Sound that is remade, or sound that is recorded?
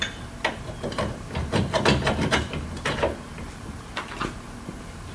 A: remade